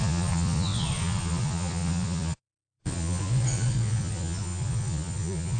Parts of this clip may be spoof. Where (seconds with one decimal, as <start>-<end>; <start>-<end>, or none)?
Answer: 0.0-5.6